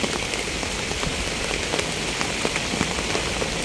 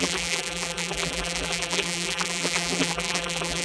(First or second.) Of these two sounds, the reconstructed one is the second